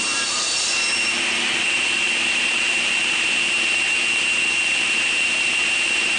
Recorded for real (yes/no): no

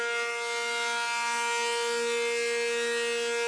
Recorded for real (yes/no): yes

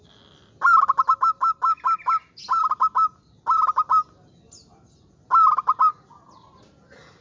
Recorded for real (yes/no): yes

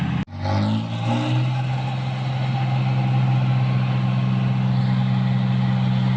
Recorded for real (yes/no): yes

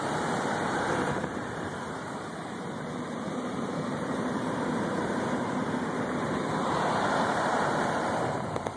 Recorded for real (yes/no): no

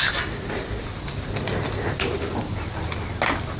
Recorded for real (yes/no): yes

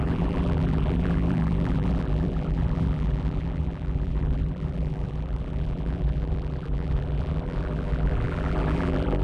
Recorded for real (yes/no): no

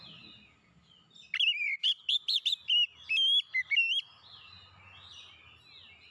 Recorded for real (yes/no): yes